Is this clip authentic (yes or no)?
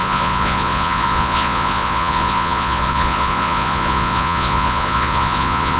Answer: no